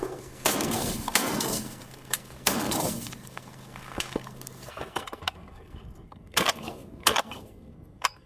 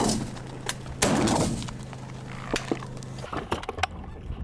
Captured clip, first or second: second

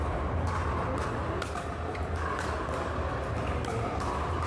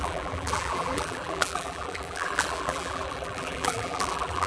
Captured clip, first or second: first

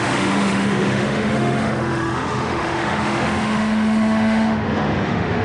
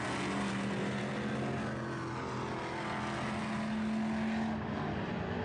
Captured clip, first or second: second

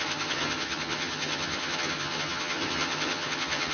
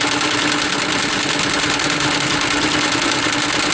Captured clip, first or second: second